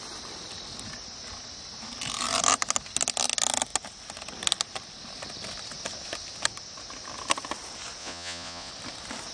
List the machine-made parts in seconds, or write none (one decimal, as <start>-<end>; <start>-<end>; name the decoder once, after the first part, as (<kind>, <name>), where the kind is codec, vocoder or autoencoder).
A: 8.0-8.7 (vocoder, Vocos)